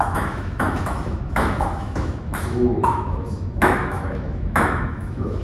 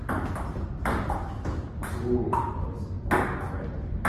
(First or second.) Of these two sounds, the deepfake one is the first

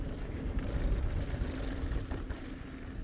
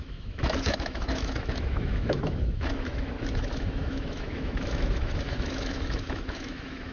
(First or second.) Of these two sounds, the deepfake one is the second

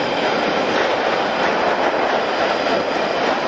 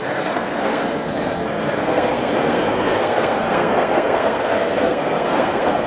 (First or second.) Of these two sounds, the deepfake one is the second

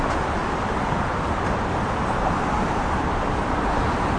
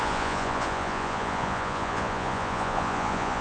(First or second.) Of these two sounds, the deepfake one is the second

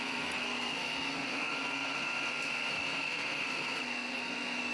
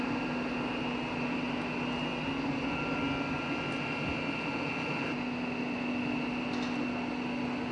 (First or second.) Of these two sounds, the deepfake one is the first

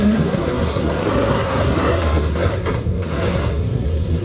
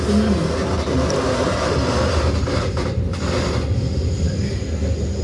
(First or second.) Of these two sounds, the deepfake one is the first